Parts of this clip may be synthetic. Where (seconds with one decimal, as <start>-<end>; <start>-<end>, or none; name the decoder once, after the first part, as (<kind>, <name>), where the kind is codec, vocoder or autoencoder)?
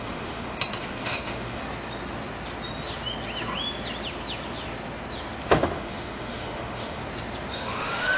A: 0.0-1.6 (autoencoder, DAC-VAE); 5.4-7.0; 7.5-8.2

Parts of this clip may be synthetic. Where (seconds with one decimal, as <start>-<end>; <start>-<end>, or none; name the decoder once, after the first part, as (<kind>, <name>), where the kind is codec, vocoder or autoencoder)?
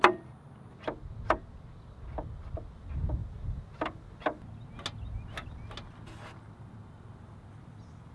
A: none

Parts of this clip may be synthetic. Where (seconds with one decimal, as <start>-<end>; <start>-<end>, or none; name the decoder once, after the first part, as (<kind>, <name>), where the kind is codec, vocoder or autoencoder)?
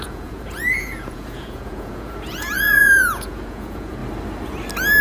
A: 0.0-4.0 (vocoder, Vocos)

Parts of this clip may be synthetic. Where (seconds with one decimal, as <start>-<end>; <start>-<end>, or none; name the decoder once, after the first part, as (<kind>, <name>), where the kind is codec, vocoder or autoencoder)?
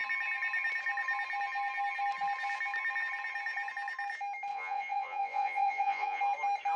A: 4.5-6.2 (vocoder, Vocos)